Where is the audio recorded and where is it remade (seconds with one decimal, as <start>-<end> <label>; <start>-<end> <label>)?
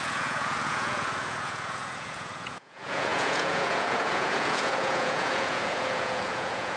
0.0-6.8 remade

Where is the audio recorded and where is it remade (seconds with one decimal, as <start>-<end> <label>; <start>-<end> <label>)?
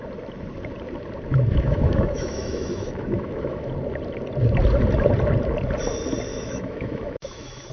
0.0-1.3 recorded; 1.3-3.7 remade; 3.7-6.3 recorded; 6.3-7.7 remade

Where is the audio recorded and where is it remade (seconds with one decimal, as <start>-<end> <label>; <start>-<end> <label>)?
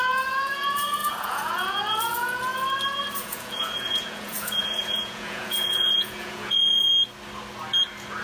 0.0-2.5 remade; 2.5-3.1 recorded; 3.1-6.9 remade; 6.9-8.2 recorded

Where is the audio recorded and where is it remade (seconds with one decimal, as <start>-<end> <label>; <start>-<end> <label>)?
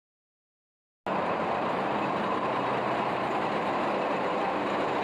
0.0-1.1 recorded; 1.1-3.6 remade; 3.6-5.0 recorded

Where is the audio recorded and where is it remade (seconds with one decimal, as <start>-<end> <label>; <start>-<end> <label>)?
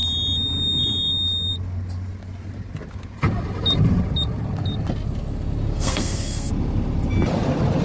0.0-5.7 recorded; 5.7-6.5 remade; 6.5-7.8 recorded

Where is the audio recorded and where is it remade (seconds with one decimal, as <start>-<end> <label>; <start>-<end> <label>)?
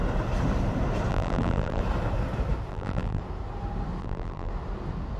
0.0-1.1 recorded; 1.1-1.8 remade; 1.8-2.7 recorded; 2.7-3.2 remade; 3.2-4.0 recorded; 4.0-4.5 remade; 4.5-5.2 recorded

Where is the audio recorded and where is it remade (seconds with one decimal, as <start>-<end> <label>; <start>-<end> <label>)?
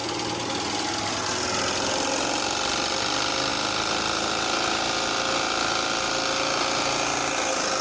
0.0-7.8 recorded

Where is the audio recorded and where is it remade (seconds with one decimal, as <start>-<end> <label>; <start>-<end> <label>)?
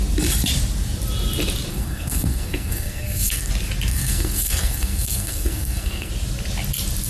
0.0-1.7 recorded; 1.7-3.5 remade; 3.5-3.9 recorded; 3.9-6.1 remade; 6.1-7.1 recorded